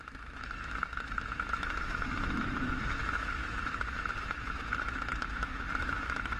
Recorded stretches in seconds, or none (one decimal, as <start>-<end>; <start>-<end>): none